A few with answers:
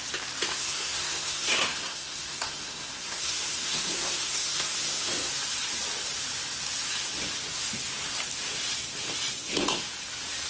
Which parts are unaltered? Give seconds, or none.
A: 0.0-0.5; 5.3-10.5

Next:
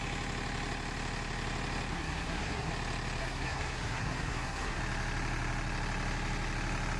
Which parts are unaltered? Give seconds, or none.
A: 0.0-1.9; 2.7-3.2; 4.8-7.0

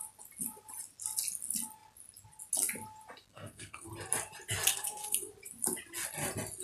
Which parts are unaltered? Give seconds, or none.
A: 0.0-3.3; 3.9-4.7; 5.3-6.6

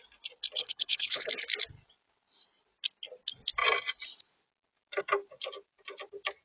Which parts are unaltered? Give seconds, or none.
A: 0.0-0.6; 1.3-6.4

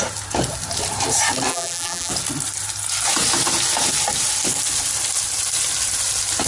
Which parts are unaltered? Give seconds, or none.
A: 0.0-1.5; 2.1-6.5

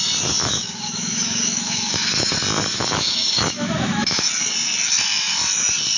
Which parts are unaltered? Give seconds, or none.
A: 0.0-0.4; 2.3-2.7; 4.3-6.0

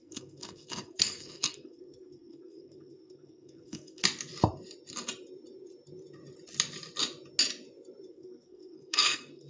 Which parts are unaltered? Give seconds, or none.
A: 4.0-8.1